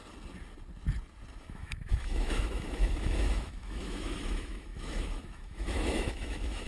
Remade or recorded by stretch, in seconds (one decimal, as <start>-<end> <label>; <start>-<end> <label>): 0.0-1.4 recorded; 1.4-6.7 remade